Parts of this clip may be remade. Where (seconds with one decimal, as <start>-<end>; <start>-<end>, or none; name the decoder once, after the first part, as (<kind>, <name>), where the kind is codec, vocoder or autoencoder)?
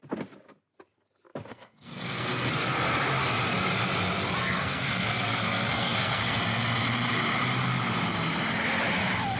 1.5-2.5 (codec, SNAC); 4.4-6.4